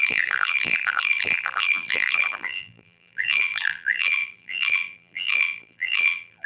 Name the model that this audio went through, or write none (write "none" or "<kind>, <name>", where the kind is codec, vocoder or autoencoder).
vocoder, BigVGAN v2